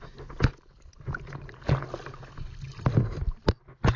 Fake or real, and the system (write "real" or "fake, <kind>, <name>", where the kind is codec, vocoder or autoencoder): real